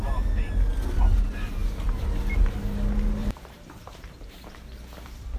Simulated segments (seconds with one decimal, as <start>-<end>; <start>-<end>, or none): 3.2-4.8